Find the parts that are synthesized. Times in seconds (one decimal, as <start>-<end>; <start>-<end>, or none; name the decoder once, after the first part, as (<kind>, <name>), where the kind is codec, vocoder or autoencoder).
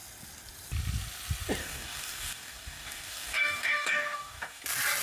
1.6-4.6 (codec, DAC)